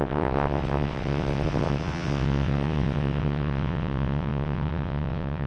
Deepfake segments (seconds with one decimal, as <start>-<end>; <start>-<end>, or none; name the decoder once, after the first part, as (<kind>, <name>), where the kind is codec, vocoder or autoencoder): 0.0-5.5 (vocoder, WaveNeXt)